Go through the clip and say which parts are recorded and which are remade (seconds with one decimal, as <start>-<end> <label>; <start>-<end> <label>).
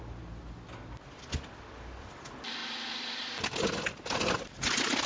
0.0-5.1 recorded